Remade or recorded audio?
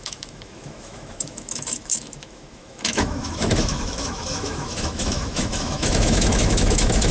remade